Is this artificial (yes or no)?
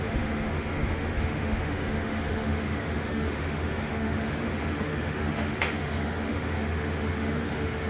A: yes